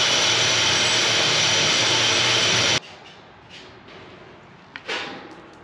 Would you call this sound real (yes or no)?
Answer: yes